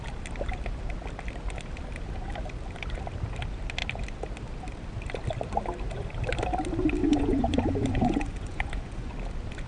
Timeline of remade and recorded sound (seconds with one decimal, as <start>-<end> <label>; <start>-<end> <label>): 0.0-7.0 recorded; 7.0-9.1 remade; 9.1-9.7 recorded